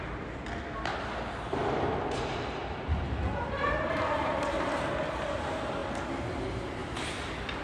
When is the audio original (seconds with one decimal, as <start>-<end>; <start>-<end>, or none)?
0.0-0.9; 4.9-6.8